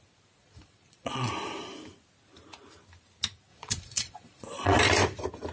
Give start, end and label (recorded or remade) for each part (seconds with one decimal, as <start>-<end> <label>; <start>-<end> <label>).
0.0-0.4 recorded; 0.4-1.3 remade; 1.3-3.5 recorded; 3.5-4.8 remade; 4.8-5.5 recorded